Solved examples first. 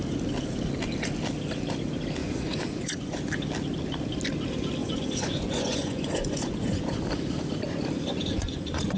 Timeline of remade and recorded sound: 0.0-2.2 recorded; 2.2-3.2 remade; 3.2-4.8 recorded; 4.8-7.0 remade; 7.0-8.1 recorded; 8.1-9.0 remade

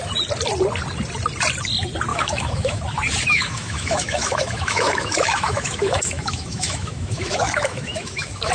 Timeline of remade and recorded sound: 0.0-2.1 recorded; 2.1-2.8 remade; 2.8-3.3 recorded; 3.3-8.5 remade

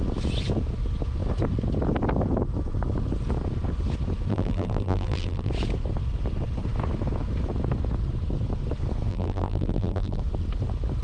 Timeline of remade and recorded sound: 0.0-4.3 recorded; 4.3-5.5 remade; 5.5-9.1 recorded; 9.1-10.2 remade; 10.2-11.0 recorded

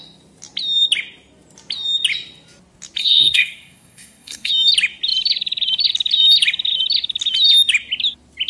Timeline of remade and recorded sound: 0.0-3.0 recorded; 3.0-4.5 remade; 4.5-8.5 recorded

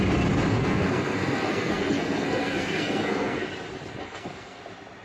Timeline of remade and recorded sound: 0.0-0.5 recorded; 0.5-3.5 remade; 3.5-4.0 recorded; 4.0-4.6 remade; 4.6-5.0 recorded

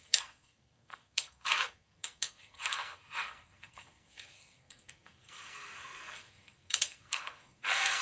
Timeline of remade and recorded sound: 0.0-8.0 remade

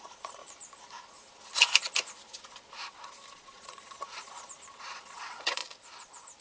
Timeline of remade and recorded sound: 0.0-0.4 remade; 0.4-3.3 recorded; 3.3-5.6 remade; 5.6-6.4 recorded